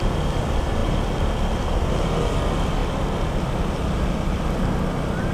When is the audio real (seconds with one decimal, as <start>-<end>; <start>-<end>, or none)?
0.0-5.3